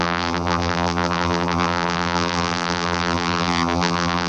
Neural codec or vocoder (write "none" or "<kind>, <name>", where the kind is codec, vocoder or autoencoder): vocoder, BigVGAN v2